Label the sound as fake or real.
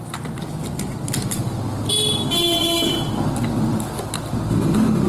real